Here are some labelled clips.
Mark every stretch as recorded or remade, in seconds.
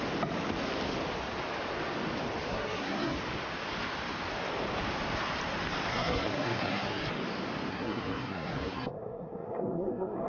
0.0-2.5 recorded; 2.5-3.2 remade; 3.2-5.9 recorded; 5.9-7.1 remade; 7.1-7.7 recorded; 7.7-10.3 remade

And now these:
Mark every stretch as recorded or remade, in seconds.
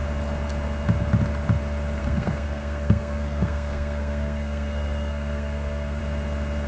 0.0-2.0 recorded; 2.0-6.0 remade; 6.0-6.7 recorded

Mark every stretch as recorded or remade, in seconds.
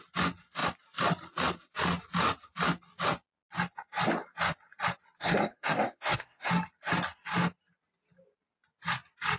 0.0-5.2 recorded; 5.2-6.5 remade; 6.5-9.4 recorded